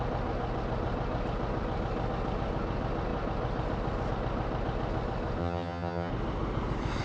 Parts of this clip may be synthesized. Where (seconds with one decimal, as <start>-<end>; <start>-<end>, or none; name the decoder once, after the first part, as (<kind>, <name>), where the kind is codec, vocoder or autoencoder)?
5.4-6.1 (vocoder, HiFi-GAN)